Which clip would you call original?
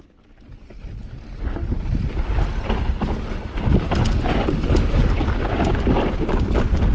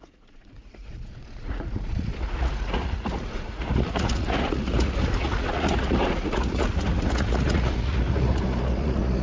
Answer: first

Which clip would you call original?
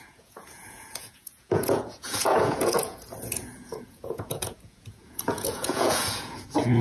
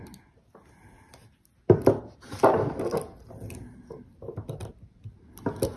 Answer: second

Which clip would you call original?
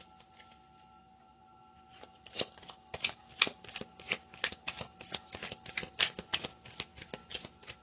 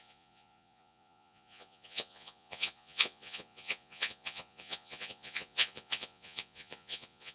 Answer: first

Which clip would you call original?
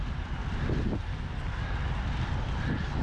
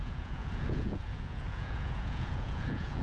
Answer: first